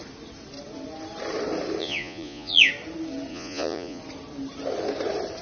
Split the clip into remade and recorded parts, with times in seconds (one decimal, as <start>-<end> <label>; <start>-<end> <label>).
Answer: 0.0-1.8 recorded; 1.8-2.7 remade; 2.7-3.3 recorded; 3.3-4.0 remade; 4.0-5.4 recorded